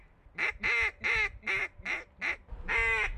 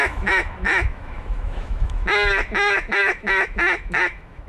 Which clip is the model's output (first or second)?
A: second